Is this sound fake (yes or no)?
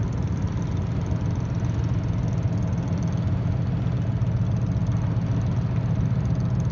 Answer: no